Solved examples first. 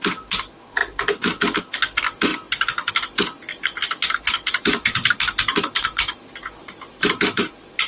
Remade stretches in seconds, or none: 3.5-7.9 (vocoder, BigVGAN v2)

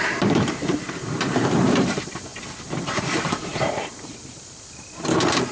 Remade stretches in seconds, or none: 0.0-2.3 (vocoder, BigVGAN v2); 2.8-5.5